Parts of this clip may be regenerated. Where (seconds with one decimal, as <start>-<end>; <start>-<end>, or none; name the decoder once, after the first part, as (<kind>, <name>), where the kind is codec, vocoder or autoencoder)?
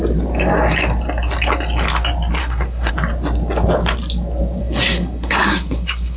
2.4-2.9 (codec, SNAC); 4.6-6.2